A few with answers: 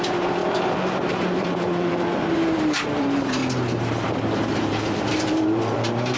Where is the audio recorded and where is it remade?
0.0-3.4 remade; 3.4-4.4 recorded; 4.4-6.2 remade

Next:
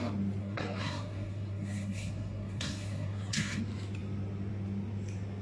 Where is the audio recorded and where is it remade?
0.0-0.4 recorded; 0.4-3.6 remade; 3.6-5.4 recorded